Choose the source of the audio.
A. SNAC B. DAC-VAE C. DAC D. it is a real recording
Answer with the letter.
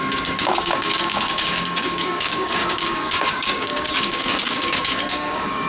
C